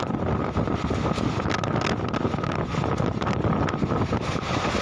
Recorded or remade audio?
recorded